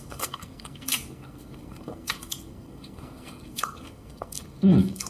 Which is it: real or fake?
fake